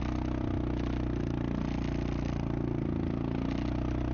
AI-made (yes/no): no